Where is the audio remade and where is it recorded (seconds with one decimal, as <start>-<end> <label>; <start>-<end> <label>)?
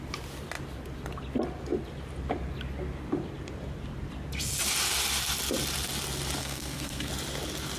0.0-6.4 recorded; 6.4-7.1 remade; 7.1-7.8 recorded